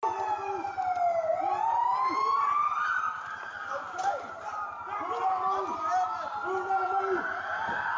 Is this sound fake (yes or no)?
no